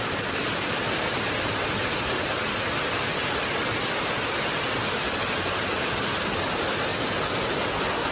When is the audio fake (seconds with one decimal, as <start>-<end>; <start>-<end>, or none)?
none